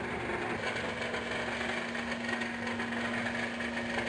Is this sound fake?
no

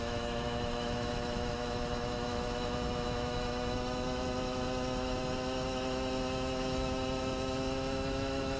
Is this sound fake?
yes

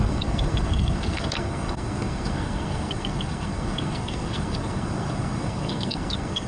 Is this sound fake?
yes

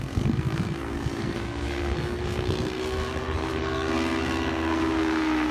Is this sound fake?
yes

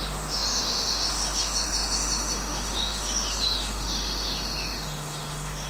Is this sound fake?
yes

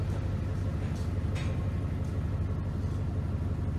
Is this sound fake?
no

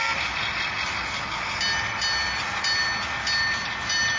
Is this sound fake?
no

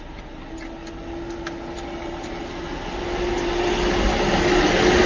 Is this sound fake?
no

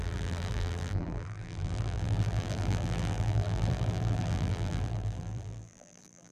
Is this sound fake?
yes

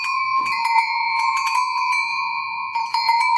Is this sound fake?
yes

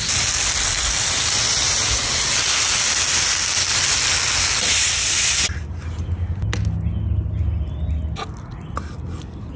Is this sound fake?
no